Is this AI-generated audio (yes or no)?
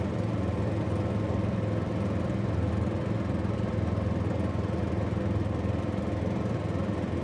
no